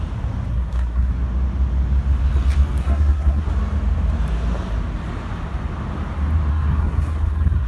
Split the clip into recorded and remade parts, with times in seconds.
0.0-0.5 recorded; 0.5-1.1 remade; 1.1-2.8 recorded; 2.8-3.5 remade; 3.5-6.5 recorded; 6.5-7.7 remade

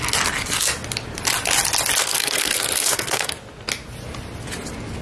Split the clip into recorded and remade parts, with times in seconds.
0.0-2.0 recorded; 2.0-3.4 remade; 3.4-5.0 recorded

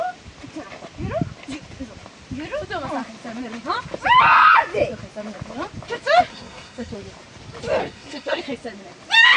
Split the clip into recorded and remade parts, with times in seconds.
0.0-6.3 recorded; 6.3-6.9 remade; 6.9-7.8 recorded; 7.8-8.4 remade; 8.4-9.4 recorded